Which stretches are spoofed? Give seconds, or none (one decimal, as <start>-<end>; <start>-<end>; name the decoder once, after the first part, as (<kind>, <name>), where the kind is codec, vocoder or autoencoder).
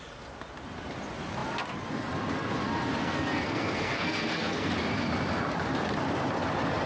3.0-4.7 (codec, SNAC)